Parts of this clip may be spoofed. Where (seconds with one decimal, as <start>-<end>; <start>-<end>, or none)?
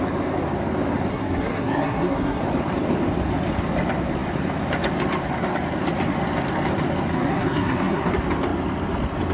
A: 1.1-2.4; 7.1-8.1